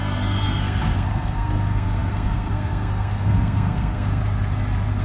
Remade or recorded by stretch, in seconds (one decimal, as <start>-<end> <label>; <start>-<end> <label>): 0.0-4.2 remade; 4.2-5.0 recorded